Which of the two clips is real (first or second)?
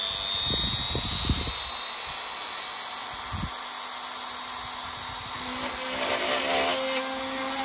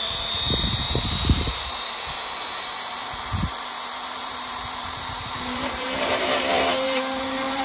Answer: first